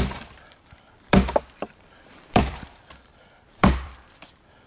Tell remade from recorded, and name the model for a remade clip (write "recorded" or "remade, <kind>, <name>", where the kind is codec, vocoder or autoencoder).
remade, vocoder, BigVGAN v2